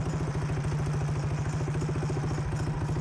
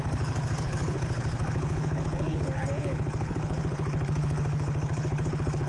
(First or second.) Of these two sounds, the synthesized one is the second